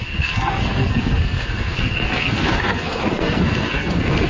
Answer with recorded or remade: remade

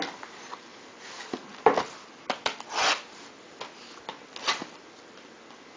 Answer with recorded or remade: recorded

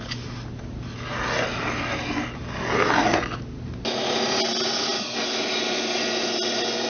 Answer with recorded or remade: recorded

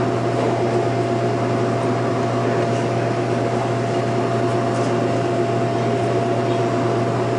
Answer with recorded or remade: recorded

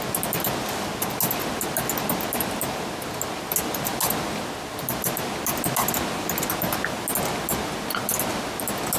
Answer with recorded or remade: recorded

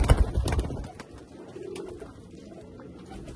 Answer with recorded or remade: recorded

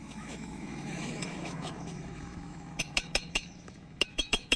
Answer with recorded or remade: remade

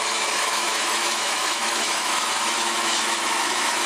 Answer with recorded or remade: remade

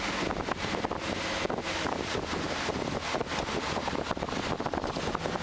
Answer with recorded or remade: recorded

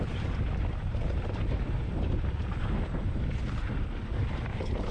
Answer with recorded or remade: remade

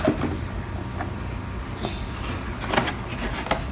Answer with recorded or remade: recorded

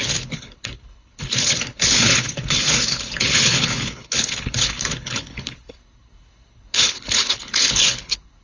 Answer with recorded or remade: remade